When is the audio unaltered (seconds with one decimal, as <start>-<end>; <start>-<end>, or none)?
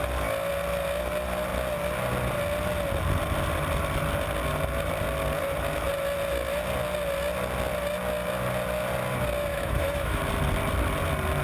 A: 0.0-9.5; 10.2-11.4